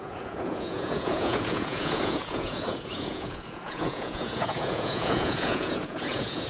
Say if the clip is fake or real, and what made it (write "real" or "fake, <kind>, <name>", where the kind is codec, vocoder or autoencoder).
fake, vocoder, Vocos